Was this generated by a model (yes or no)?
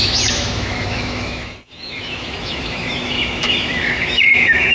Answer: yes